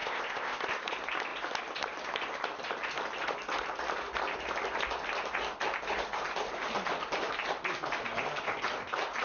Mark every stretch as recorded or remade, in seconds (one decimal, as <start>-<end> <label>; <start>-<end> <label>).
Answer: 0.0-0.6 remade; 0.6-9.2 recorded